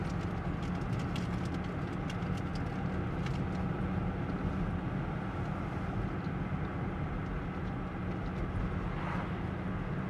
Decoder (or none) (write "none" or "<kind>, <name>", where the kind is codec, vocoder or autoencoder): none